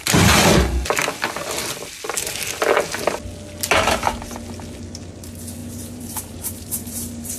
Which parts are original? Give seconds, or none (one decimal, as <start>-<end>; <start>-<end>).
0.0-5.6